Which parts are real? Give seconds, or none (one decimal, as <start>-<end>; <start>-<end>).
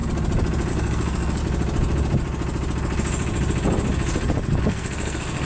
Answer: 0.0-0.7; 1.4-4.6